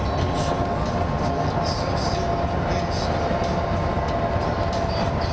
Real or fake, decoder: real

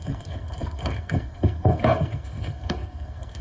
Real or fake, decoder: fake, codec, SNAC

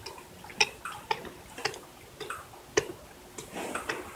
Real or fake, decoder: real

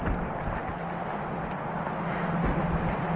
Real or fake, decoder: real